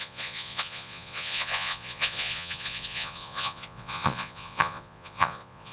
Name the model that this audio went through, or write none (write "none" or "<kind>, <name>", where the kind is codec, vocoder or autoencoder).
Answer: vocoder, Vocos